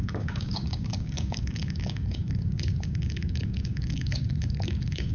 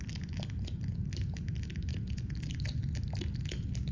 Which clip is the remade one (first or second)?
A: first